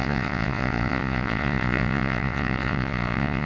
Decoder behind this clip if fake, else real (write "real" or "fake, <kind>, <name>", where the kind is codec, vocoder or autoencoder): fake, vocoder, Vocos